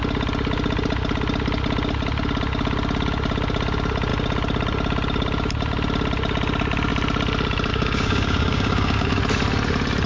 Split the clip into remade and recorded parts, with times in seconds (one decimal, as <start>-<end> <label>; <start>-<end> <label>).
0.0-7.7 recorded; 7.7-9.2 remade; 9.2-10.1 recorded